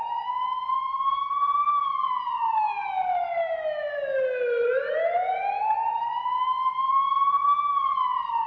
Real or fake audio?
real